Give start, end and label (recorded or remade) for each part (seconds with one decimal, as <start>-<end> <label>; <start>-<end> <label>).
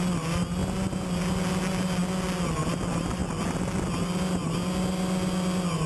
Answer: 0.0-5.9 recorded